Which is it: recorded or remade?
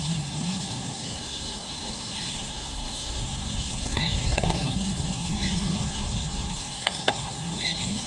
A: remade